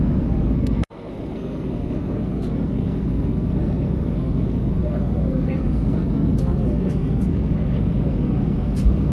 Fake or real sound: fake